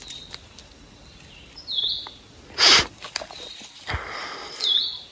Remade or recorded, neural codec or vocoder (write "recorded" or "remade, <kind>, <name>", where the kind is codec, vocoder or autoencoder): recorded